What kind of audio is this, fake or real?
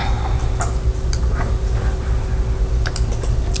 real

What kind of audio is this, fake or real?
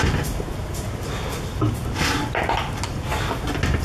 real